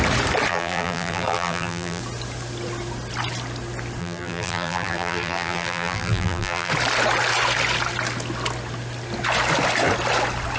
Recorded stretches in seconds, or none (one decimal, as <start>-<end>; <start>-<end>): 0.0-0.5; 2.0-4.0; 6.7-10.6